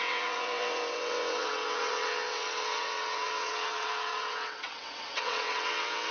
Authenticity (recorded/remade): remade